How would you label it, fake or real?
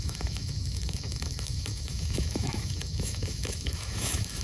fake